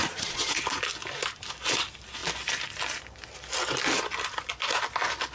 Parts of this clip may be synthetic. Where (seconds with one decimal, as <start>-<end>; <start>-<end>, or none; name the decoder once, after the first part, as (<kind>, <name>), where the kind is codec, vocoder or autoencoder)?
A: 0.0-0.6 (vocoder, Vocos)